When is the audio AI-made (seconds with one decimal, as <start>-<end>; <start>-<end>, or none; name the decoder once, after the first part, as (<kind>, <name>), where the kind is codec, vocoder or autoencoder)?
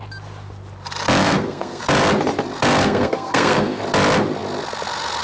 1.2-1.8 (codec, SNAC); 2.8-3.8